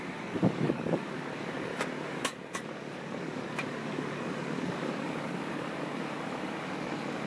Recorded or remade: remade